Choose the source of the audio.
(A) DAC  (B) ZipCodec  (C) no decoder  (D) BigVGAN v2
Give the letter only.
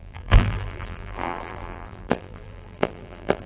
D